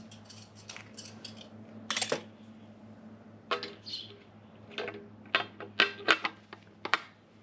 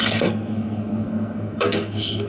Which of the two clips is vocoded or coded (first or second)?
second